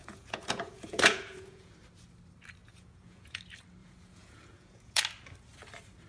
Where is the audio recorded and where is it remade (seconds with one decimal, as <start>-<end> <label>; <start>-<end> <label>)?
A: 0.0-1.7 remade; 1.7-2.6 recorded; 2.6-3.4 remade; 3.4-3.8 recorded; 3.8-5.0 remade; 5.0-6.1 recorded